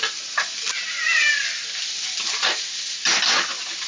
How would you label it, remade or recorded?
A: recorded